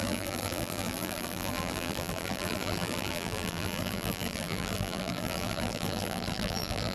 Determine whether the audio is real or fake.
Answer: fake